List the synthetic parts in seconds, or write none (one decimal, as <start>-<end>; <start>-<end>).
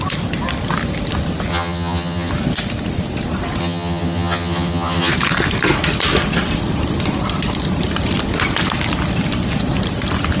1.5-2.3; 3.6-5.1